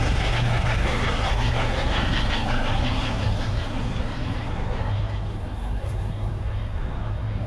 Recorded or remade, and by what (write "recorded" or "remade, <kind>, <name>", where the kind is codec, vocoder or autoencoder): remade, codec, SNAC